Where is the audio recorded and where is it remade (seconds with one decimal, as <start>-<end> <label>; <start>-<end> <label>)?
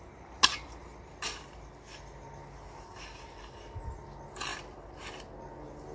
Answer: 0.0-5.9 recorded